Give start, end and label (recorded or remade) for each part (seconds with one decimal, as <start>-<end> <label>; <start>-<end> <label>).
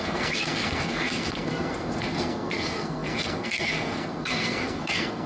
0.0-5.3 remade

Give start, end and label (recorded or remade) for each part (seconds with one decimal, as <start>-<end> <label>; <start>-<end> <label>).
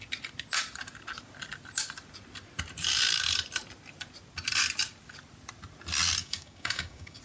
0.0-6.2 recorded; 6.2-7.2 remade